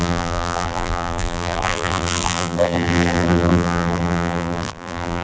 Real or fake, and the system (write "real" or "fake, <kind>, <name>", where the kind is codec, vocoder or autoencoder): fake, vocoder, BigVGAN v2